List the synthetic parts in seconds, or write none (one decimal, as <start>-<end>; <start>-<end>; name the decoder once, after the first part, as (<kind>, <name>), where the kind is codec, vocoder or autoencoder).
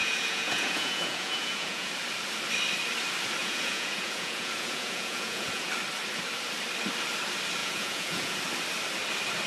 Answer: 0.0-1.9 (vocoder, Vocos); 3.4-5.7; 7.6-8.4